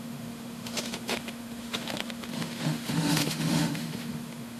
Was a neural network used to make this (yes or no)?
yes